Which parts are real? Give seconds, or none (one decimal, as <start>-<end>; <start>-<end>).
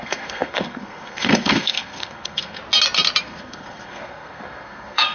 2.6-3.2